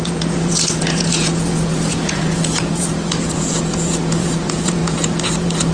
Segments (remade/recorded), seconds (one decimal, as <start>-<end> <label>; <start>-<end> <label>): 0.0-5.7 remade